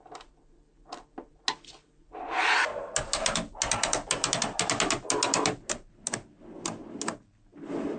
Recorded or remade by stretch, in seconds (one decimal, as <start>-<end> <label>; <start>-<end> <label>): 0.0-8.0 recorded